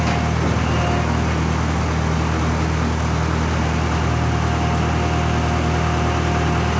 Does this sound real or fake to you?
real